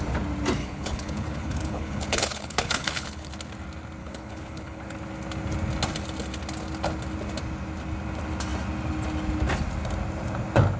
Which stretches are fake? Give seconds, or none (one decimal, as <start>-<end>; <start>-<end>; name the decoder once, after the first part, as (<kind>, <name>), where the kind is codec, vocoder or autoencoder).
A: 0.6-3.3 (codec, HILCodec); 4.0-4.8